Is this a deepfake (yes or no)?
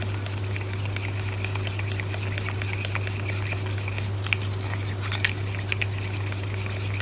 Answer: no